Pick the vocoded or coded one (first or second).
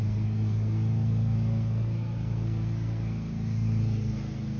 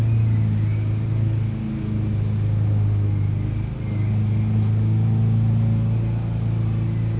first